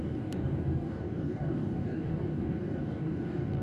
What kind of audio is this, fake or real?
fake